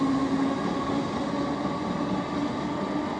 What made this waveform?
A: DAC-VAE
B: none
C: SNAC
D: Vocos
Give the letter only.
B